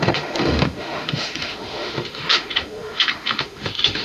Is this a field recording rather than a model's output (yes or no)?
no